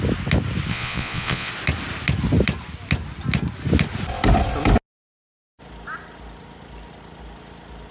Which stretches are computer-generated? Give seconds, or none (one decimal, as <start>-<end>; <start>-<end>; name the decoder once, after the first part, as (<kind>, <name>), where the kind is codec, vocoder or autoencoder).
0.7-1.5 (vocoder, Vocos)